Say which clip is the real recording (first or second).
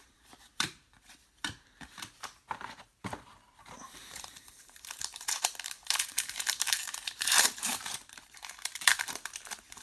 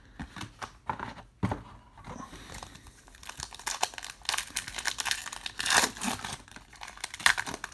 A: second